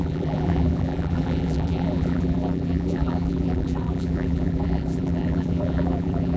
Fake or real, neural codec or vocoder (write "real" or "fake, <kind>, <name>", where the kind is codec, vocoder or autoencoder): fake, vocoder, BigVGAN v2